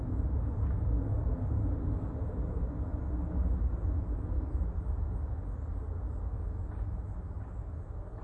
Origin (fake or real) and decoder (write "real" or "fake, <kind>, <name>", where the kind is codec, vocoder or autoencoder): real